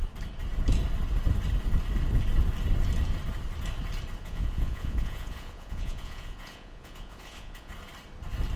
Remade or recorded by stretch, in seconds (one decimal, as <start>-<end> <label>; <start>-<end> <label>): 0.0-4.2 recorded; 4.2-7.7 remade; 7.7-8.6 recorded